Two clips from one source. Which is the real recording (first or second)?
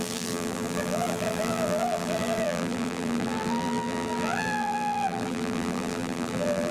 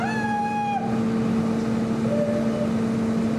second